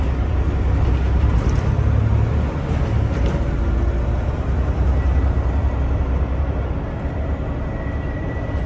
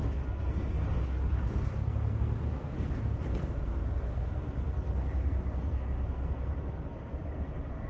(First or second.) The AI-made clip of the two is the second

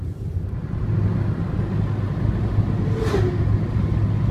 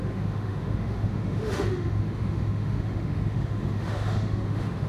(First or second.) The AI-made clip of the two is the second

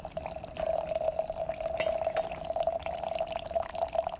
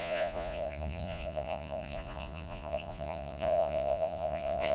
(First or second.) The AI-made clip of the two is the second